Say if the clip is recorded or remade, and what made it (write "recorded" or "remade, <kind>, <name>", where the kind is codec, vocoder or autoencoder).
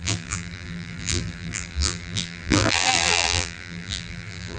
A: remade, vocoder, BigVGAN v2